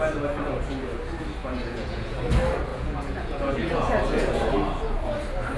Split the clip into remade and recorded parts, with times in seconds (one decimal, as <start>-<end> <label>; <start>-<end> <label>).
0.0-1.4 recorded; 1.4-2.2 remade; 2.2-2.7 recorded; 2.7-4.5 remade; 4.5-5.6 recorded